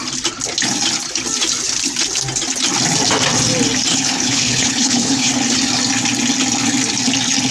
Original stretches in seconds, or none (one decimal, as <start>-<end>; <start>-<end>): 0.0-3.9; 5.3-7.5